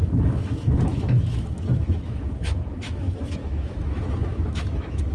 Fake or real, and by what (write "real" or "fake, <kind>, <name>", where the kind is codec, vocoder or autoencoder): fake, autoencoder, DAC-VAE